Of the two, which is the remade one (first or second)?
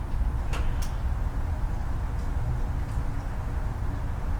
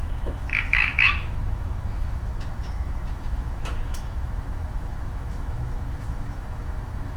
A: second